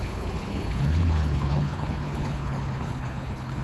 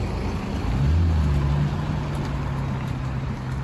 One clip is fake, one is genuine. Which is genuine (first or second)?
second